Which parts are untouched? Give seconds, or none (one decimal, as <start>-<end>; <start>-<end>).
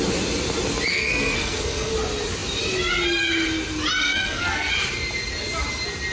0.0-0.9; 1.9-4.0; 4.7-6.1